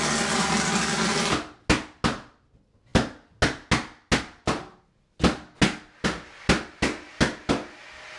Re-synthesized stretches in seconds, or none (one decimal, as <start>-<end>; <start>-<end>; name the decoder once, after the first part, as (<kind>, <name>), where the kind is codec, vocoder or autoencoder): none

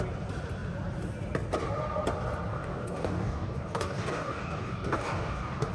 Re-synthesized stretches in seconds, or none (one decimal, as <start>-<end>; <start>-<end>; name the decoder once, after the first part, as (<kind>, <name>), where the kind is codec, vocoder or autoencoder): 2.5-5.7 (codec, DAC)